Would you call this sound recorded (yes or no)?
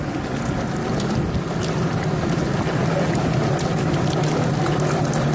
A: yes